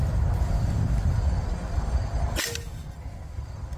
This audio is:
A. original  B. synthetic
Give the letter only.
A